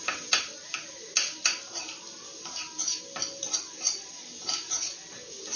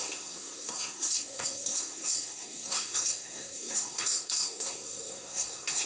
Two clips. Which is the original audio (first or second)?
first